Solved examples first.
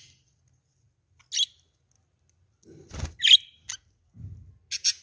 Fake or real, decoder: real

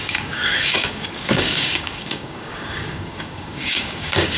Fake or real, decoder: fake, codec, DAC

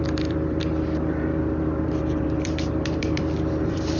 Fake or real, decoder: fake, vocoder, BigVGAN v2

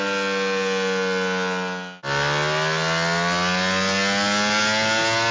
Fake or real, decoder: real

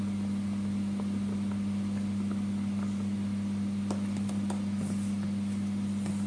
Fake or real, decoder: real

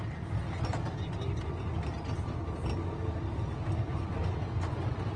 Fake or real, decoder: real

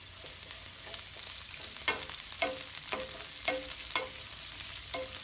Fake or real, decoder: real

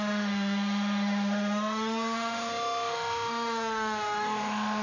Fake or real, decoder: fake, autoencoder, DAC-VAE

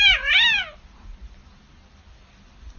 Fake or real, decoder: real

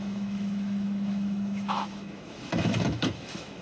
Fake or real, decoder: fake, autoencoder, DAC-VAE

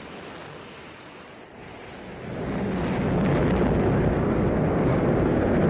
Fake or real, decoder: real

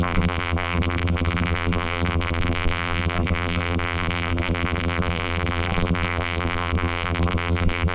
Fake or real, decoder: fake, vocoder, BigVGAN v2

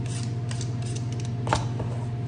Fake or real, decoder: real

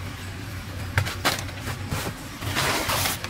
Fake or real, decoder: fake, vocoder, BigVGAN v2